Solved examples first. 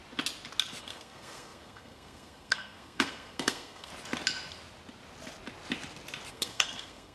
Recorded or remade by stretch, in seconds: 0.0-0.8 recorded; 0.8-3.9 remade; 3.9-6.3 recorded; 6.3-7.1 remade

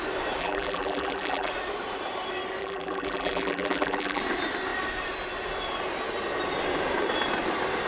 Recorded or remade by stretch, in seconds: 0.0-0.4 recorded; 0.4-1.5 remade; 1.5-2.6 recorded; 2.6-4.2 remade; 4.2-7.9 recorded

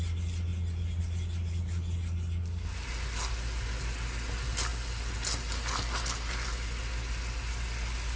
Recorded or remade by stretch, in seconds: 0.0-8.2 recorded